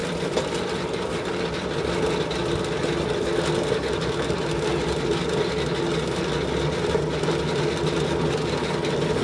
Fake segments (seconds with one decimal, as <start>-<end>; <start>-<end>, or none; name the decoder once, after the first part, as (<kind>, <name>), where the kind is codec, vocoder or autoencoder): none